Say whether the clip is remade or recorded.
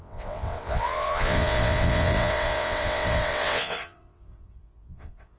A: remade